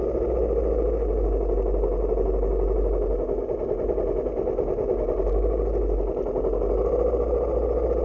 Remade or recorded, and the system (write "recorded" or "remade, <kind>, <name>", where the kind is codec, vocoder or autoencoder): recorded